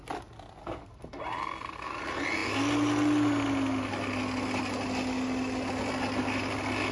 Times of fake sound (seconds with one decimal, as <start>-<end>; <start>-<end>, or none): 0.6-1.2